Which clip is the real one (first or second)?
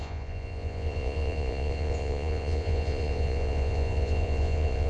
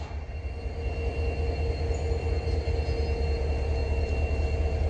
second